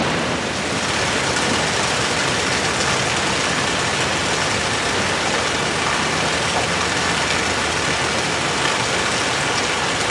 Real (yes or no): yes